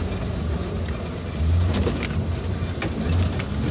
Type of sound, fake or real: real